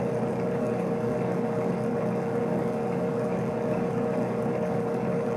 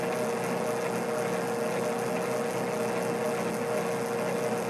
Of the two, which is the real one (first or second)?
second